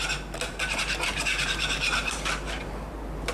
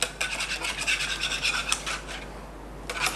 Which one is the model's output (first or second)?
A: first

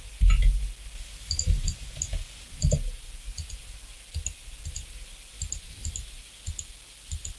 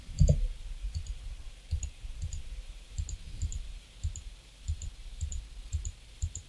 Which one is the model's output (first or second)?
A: second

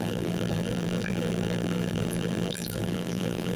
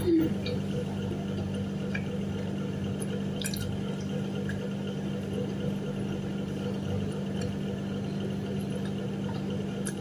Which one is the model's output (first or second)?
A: first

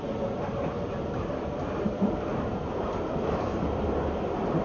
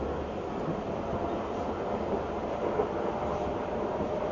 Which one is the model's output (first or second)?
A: first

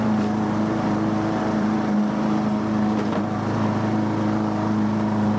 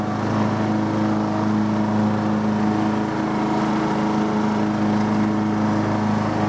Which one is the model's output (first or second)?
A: first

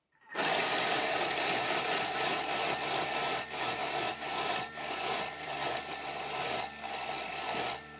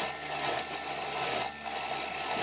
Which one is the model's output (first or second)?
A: first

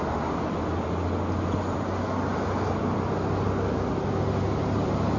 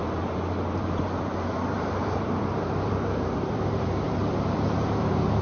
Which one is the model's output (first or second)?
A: second